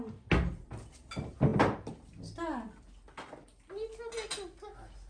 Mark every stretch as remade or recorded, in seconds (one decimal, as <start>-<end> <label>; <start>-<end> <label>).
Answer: 0.0-5.1 recorded